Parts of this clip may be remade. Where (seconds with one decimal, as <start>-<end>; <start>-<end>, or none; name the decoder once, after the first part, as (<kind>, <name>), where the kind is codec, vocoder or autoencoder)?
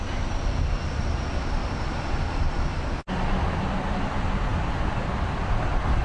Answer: none